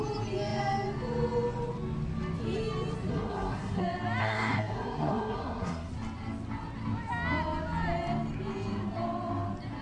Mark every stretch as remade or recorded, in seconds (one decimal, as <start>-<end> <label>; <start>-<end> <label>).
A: 0.0-3.1 recorded; 3.1-3.8 remade; 3.8-4.2 recorded; 4.2-5.9 remade; 5.9-9.8 recorded